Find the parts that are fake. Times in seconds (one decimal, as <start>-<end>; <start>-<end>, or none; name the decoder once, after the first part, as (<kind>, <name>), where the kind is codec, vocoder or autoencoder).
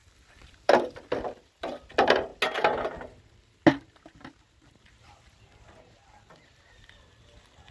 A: 0.0-2.3 (vocoder, BigVGAN v2); 6.7-7.7